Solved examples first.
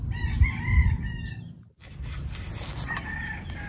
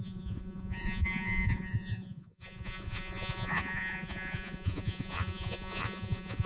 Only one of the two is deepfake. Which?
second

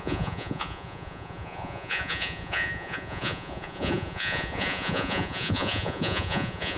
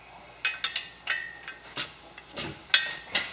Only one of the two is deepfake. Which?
first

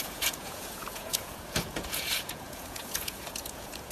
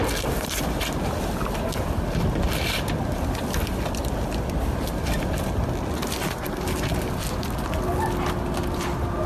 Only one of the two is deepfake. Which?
first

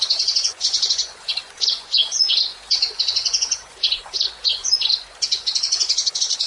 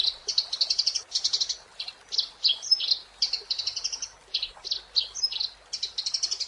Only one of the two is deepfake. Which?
first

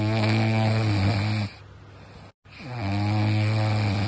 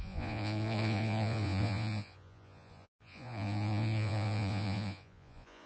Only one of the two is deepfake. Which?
second